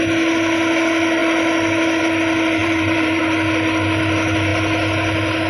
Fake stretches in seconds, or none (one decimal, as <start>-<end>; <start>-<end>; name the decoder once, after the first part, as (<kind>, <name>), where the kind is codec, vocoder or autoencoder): 2.6-3.2 (vocoder, BigVGAN v2)